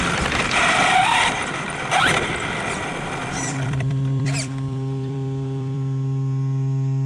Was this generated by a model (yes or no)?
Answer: yes